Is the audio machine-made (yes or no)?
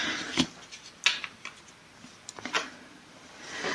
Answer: no